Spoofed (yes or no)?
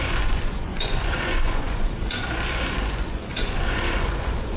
yes